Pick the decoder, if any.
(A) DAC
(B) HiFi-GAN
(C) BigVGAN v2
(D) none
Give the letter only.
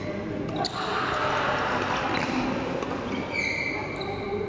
D